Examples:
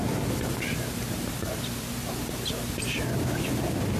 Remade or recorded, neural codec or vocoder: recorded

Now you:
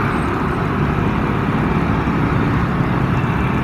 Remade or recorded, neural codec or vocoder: recorded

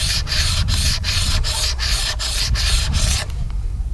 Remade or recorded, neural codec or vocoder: remade, vocoder, BigVGAN v2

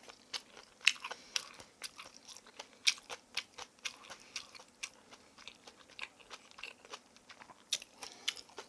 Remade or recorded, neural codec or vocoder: recorded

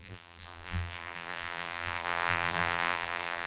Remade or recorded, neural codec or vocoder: remade, vocoder, BigVGAN v2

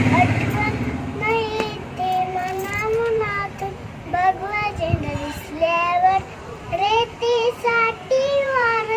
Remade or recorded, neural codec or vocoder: remade, vocoder, BigVGAN v2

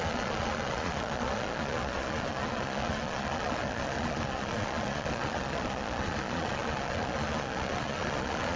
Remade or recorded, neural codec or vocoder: remade, vocoder, Vocos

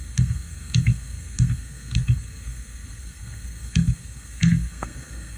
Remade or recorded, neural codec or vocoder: remade, codec, SNAC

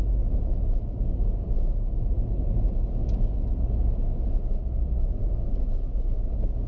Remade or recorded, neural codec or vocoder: recorded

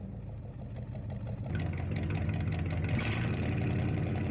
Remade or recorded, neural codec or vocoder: recorded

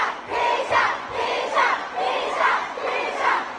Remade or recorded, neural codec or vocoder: remade, vocoder, Vocos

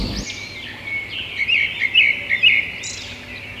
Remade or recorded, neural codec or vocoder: recorded